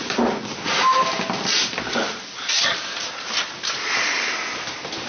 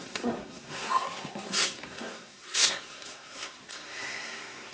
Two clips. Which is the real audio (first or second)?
first